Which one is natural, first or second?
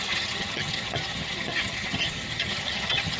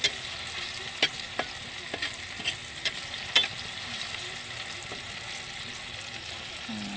second